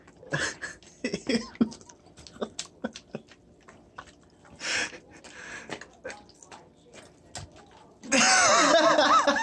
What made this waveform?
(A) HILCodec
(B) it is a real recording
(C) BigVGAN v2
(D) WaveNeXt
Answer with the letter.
B